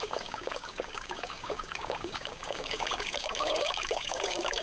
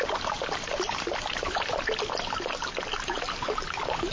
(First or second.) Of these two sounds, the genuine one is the second